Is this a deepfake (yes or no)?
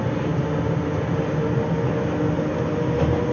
no